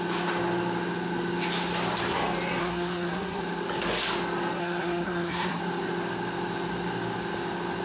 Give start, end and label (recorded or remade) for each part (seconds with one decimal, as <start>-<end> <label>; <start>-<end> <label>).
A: 0.0-2.6 recorded; 2.6-3.4 remade; 3.4-4.6 recorded; 4.6-5.6 remade; 5.6-7.8 recorded